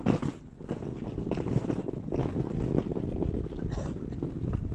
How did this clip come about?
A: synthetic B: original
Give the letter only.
B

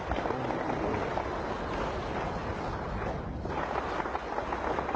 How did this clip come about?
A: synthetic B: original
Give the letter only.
B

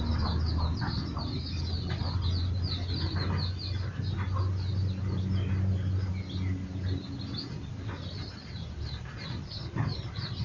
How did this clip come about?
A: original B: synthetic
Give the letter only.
A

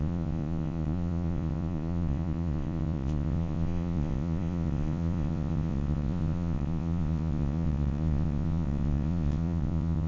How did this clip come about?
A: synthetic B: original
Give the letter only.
A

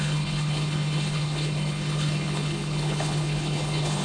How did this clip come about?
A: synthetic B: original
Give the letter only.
A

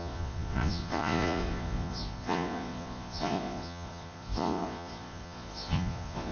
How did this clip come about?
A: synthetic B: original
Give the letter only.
A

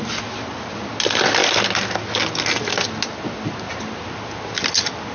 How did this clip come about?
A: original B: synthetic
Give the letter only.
A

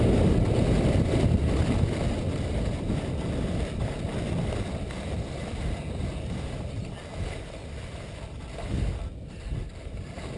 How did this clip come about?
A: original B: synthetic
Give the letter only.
A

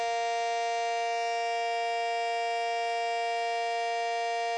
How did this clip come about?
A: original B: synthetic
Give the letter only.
A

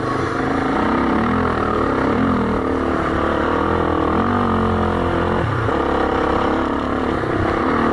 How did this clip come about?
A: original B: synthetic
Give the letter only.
A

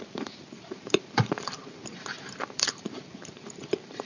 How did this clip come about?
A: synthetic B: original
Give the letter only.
A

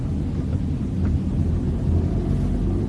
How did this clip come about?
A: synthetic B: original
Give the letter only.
B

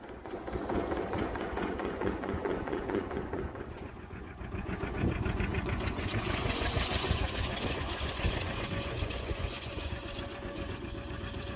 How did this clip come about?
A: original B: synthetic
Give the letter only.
B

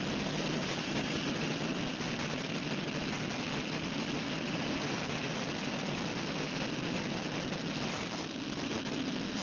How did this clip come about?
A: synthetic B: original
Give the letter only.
B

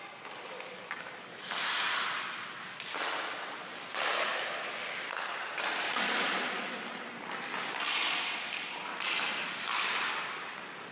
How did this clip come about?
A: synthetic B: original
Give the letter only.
B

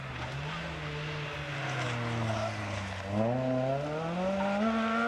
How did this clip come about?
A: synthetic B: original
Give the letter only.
B